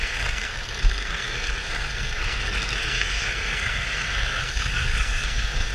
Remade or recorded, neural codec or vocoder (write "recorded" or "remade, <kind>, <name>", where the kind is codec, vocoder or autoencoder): remade, codec, SNAC